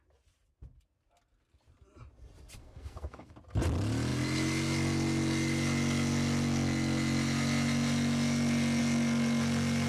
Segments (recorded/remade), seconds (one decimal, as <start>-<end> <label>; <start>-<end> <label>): 0.0-2.6 recorded; 2.6-3.3 remade; 3.3-9.9 recorded